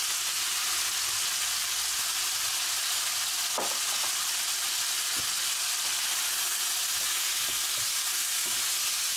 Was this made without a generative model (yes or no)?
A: yes